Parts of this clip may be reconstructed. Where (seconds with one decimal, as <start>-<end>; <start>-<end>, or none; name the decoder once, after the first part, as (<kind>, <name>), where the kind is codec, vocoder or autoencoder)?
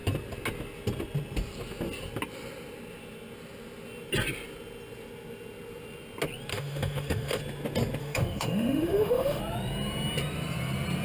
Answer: 6.5-7.4 (autoencoder, DAC-VAE); 8.0-9.4